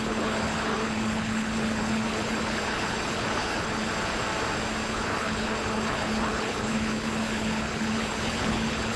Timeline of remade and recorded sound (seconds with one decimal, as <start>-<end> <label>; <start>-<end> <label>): 0.0-3.8 remade; 3.8-4.9 recorded; 4.9-9.0 remade